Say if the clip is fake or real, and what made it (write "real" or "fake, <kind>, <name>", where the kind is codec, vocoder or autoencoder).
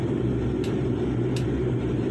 real